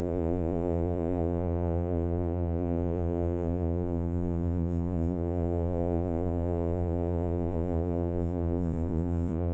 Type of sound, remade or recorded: remade